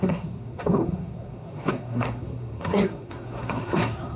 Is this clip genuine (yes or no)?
no